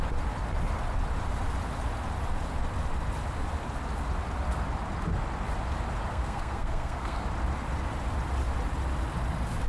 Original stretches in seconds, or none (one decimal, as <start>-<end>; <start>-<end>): 0.0-6.1; 7.2-9.7